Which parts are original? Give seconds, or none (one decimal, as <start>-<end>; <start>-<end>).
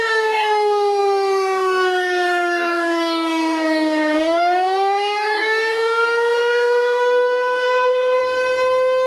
8.2-9.1